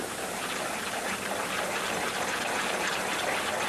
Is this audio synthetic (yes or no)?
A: no